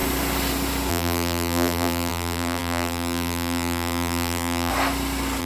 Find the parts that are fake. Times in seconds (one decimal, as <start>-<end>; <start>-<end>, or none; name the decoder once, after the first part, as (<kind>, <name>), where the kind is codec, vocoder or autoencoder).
0.9-4.7 (vocoder, BigVGAN v2)